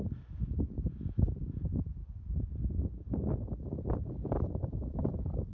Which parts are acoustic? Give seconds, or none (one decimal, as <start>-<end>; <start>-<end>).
0.4-3.7